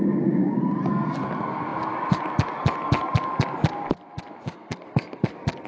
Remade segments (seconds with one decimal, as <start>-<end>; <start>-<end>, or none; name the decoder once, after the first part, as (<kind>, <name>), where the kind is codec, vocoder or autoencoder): 4.4-5.3 (codec, SNAC)